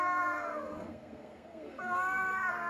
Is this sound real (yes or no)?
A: no